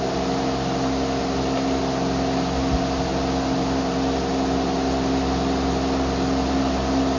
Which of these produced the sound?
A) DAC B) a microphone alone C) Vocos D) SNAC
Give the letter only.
B